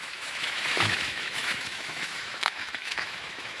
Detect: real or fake fake